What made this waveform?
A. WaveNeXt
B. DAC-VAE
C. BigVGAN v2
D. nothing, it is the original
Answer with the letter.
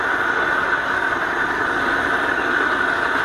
D